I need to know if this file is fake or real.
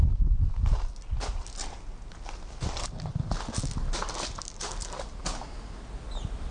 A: real